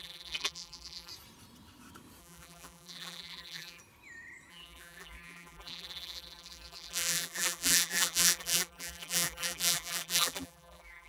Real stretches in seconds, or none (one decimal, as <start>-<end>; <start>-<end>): 1.1-2.2; 3.8-4.5